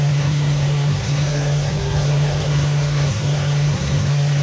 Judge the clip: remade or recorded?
remade